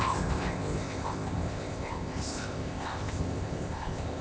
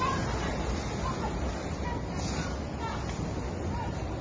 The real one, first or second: second